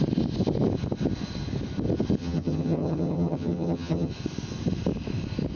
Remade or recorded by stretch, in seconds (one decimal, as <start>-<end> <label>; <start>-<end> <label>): 0.0-2.2 recorded; 2.2-4.1 remade; 4.1-5.6 recorded